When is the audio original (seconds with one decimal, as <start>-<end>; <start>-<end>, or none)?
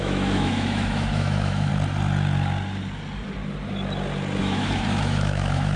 1.7-4.4